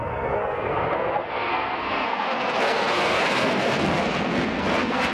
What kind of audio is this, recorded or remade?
remade